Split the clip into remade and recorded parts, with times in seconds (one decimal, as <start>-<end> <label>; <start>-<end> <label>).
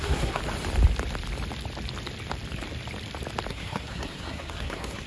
0.0-0.4 remade; 0.4-3.5 recorded; 3.5-5.1 remade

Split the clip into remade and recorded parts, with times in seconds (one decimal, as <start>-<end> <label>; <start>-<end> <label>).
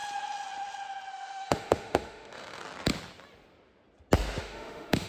0.0-1.1 recorded; 1.1-2.6 remade; 2.6-4.4 recorded; 4.4-5.1 remade